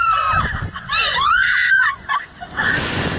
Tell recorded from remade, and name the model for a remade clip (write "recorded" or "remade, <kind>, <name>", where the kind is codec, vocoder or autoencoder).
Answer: remade, vocoder, Vocos